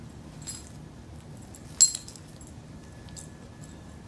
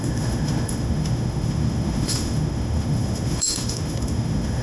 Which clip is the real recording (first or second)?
first